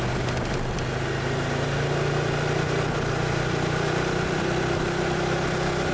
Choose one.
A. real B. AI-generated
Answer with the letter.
A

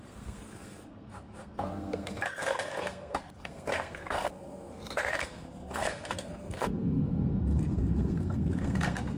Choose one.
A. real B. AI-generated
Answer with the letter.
B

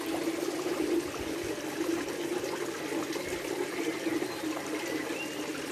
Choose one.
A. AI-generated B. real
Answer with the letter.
B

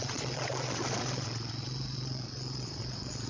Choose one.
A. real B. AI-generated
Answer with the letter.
B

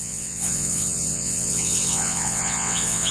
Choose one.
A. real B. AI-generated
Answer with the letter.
B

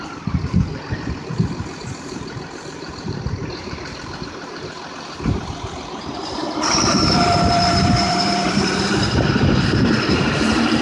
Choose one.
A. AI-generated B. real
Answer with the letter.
A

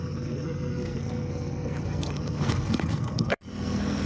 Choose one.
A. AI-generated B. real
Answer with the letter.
A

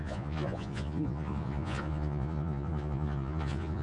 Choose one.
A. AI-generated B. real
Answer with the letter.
A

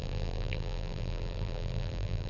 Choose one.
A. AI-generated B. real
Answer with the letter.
A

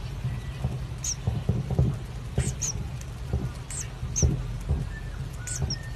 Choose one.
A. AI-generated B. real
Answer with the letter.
B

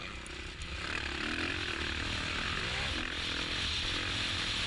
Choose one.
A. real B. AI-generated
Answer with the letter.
A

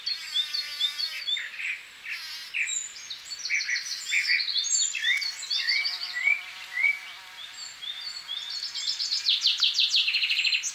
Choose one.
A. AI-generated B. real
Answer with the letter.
B